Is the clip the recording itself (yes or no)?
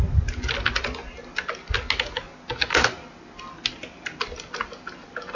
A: yes